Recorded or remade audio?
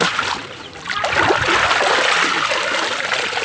recorded